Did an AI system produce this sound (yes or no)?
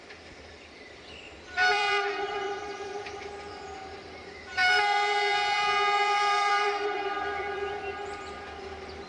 yes